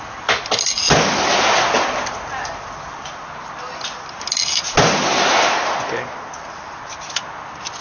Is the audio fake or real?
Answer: real